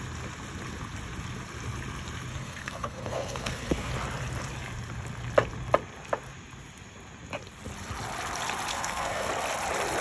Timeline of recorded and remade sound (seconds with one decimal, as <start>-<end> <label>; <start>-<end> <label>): 0.0-2.3 recorded; 2.3-3.9 remade; 3.9-8.7 recorded; 8.7-9.3 remade; 9.3-10.0 recorded